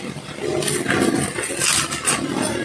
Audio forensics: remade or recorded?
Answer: recorded